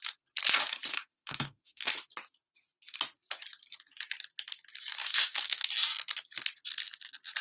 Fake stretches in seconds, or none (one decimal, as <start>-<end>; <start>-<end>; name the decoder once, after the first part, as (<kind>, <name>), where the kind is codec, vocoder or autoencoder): 0.9-1.9 (autoencoder, DAC-VAE); 5.0-5.7